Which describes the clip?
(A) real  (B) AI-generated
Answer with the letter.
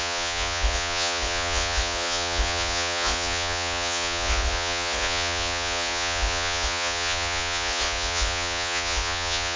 B